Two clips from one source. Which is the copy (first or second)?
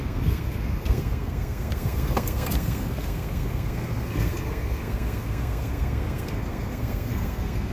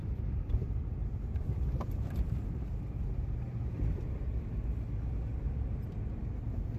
first